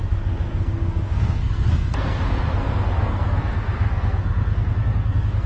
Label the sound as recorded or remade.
remade